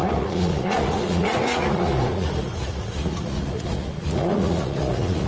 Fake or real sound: fake